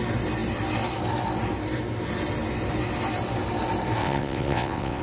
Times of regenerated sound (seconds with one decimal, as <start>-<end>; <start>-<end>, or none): 4.0-5.0